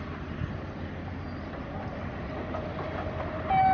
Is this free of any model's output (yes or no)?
yes